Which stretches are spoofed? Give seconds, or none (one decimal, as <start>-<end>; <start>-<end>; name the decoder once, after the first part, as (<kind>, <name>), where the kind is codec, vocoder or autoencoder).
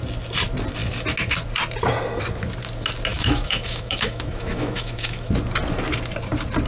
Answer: 3.1-5.3 (autoencoder, DAC-VAE)